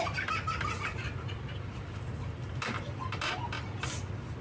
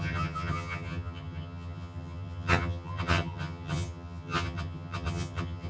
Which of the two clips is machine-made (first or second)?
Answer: second